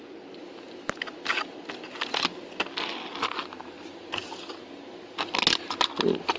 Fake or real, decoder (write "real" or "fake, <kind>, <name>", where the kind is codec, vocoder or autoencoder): real